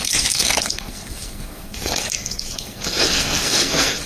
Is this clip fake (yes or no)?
yes